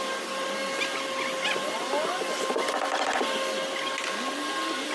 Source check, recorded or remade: recorded